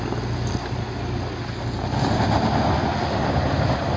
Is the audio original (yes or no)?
yes